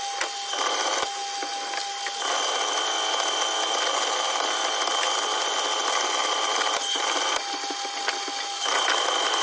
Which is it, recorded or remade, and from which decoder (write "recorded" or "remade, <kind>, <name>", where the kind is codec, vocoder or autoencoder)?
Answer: recorded